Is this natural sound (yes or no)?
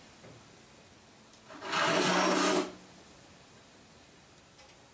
yes